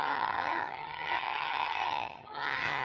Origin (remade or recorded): remade